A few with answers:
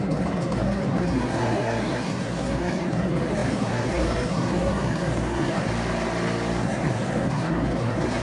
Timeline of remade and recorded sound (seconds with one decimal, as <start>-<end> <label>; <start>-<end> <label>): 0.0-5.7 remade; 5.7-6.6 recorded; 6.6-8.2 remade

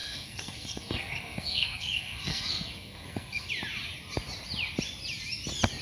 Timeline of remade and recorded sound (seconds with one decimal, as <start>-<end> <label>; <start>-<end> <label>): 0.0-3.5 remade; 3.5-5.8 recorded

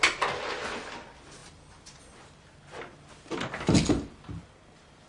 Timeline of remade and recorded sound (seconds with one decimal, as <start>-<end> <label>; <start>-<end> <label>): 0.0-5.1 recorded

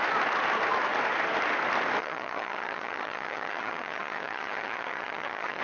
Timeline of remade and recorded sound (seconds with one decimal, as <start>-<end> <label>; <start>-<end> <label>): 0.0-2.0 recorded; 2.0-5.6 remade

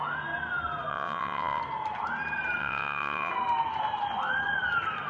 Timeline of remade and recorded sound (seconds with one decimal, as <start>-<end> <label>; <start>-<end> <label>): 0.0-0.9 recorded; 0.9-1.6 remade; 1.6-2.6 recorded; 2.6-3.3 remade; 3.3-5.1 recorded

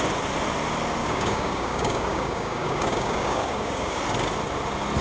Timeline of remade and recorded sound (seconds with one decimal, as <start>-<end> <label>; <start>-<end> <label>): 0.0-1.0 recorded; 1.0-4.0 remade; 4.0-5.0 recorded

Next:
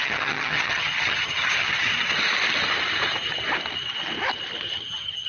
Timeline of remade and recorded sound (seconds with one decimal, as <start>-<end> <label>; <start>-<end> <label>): 0.0-1.9 remade; 1.9-4.7 recorded; 4.7-5.3 remade

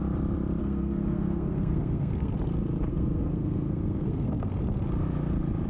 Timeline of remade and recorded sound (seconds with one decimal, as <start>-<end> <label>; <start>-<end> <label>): 0.0-0.6 recorded; 0.6-2.3 remade; 2.3-2.9 recorded; 2.9-4.5 remade; 4.5-5.7 recorded